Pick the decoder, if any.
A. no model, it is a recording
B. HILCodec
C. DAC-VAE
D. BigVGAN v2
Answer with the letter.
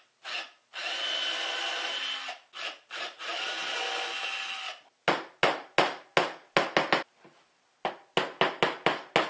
A